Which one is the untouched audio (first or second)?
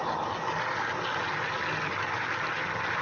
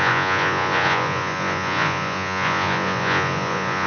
first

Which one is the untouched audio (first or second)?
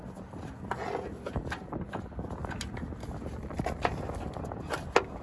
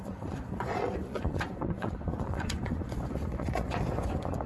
first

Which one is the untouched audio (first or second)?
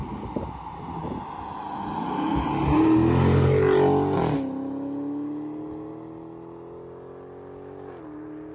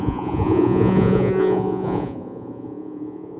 first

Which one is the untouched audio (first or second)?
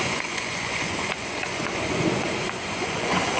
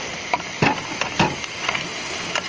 second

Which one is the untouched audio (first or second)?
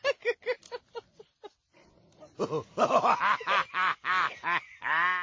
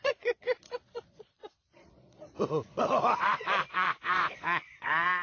first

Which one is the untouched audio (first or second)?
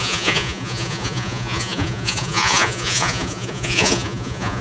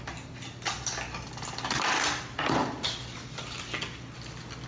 second